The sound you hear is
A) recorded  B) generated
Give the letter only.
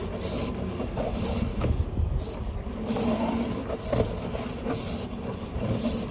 A